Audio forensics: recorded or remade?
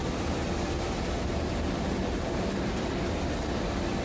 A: recorded